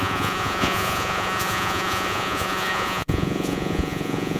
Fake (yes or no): yes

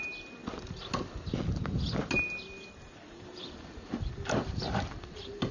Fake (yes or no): no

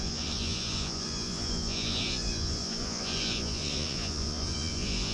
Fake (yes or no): yes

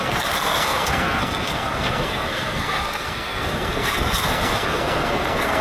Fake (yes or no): yes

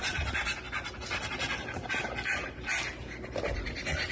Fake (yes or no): no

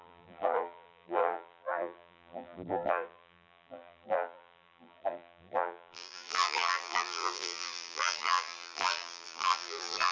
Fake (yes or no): yes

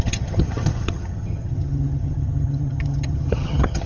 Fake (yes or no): yes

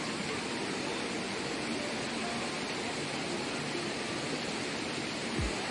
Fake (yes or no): no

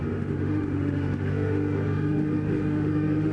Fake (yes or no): yes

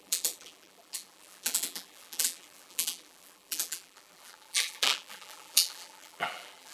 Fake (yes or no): yes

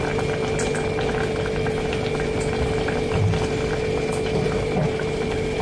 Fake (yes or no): no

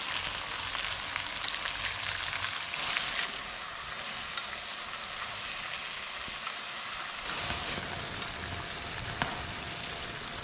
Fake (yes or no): no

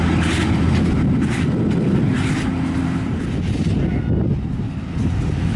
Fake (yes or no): no